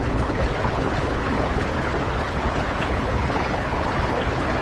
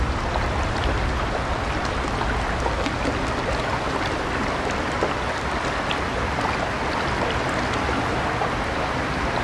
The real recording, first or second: second